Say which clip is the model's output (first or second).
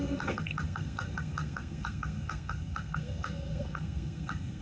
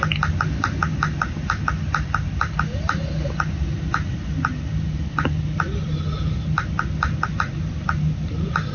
first